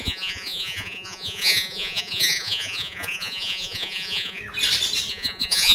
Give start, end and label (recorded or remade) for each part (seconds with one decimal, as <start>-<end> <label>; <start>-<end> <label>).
0.0-4.4 remade; 4.4-5.1 recorded; 5.1-5.7 remade

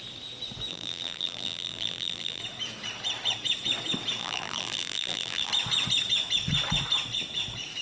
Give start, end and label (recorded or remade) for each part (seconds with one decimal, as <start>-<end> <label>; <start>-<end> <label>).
0.0-0.7 recorded; 0.7-2.4 remade; 2.4-4.2 recorded; 4.2-5.5 remade; 5.5-7.8 recorded

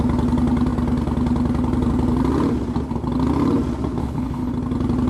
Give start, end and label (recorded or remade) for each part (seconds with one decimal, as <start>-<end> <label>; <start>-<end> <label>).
0.0-4.0 recorded; 4.0-4.5 remade; 4.5-5.1 recorded

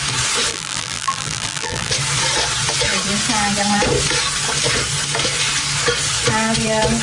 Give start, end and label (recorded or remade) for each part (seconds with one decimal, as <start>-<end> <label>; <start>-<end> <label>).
0.0-0.5 recorded; 0.5-1.9 remade; 1.9-7.0 recorded